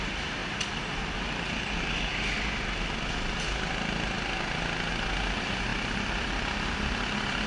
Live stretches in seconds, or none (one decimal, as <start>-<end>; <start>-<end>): 0.0-7.5